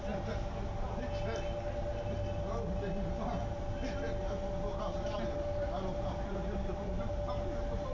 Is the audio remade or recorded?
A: recorded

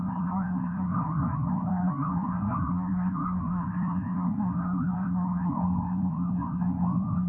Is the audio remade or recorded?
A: remade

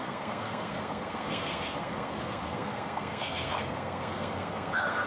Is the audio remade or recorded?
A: remade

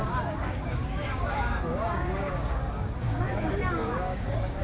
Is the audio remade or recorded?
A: remade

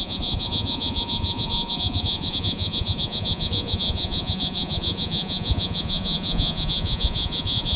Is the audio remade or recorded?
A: remade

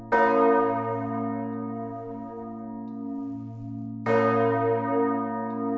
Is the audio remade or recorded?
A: recorded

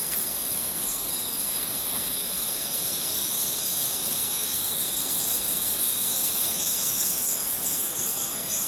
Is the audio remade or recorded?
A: remade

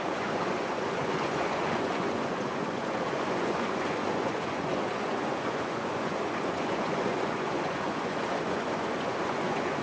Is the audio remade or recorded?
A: remade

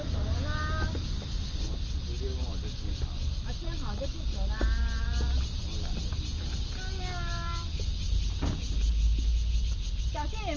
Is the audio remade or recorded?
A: recorded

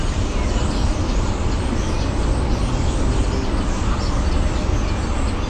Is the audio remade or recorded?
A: recorded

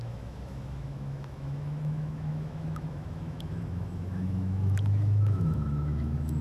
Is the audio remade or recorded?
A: remade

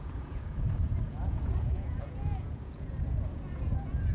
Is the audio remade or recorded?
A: remade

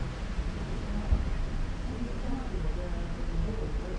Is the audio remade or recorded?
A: recorded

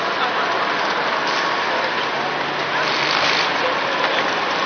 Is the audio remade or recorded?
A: recorded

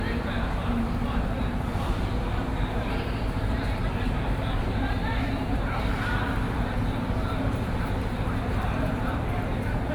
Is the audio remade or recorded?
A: remade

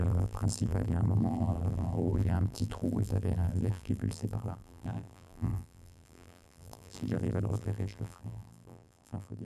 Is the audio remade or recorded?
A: remade